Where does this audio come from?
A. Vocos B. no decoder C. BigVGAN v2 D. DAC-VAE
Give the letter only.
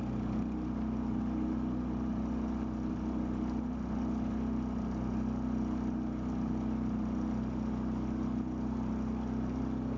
B